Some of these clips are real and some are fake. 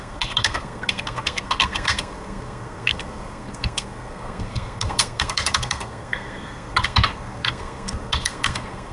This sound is fake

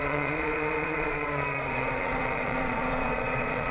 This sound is fake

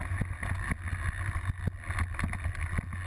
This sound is real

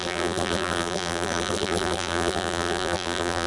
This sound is fake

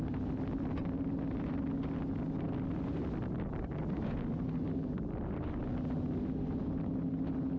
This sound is real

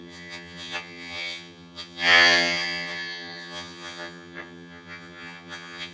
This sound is fake